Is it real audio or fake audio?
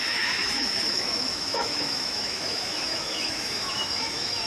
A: fake